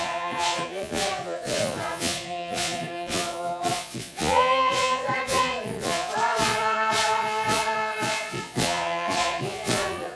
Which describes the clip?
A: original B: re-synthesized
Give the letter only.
B